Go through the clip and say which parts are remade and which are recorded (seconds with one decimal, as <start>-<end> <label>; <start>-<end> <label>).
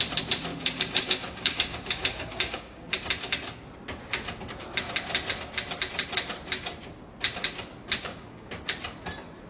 0.0-0.5 recorded; 0.5-2.9 remade; 2.9-8.0 recorded; 8.0-8.5 remade; 8.5-9.5 recorded